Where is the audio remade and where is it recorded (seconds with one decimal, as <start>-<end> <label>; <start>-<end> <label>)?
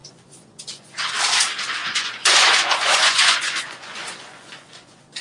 0.0-1.1 remade; 1.1-1.8 recorded; 1.8-5.2 remade